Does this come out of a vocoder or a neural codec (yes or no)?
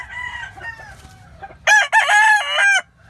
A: no